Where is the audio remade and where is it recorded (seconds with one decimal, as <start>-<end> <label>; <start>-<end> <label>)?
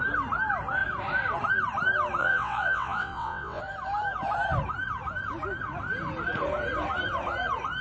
0.0-2.2 recorded; 2.2-3.6 remade; 3.6-7.8 recorded